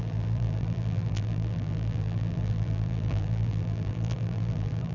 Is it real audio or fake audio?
fake